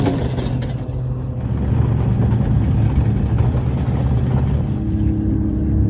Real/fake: real